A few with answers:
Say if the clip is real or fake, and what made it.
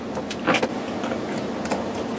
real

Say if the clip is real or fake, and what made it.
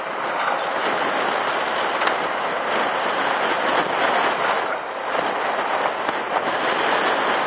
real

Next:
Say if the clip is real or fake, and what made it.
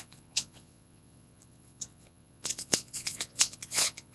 fake, vocoder, Vocos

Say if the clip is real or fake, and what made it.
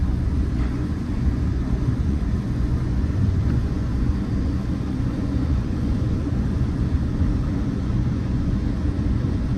fake, vocoder, Vocos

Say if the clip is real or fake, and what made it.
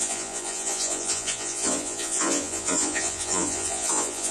fake, vocoder, Vocos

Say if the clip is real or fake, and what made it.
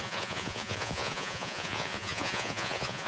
fake, vocoder, Vocos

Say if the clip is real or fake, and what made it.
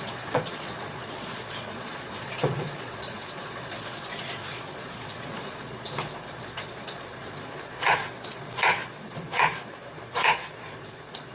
fake, vocoder, Vocos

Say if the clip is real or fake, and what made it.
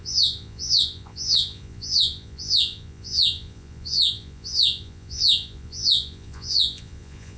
fake, vocoder, Vocos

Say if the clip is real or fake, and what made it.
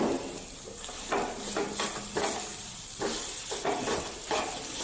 real